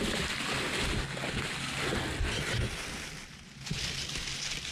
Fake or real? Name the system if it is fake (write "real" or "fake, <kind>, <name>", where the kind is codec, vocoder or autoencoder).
real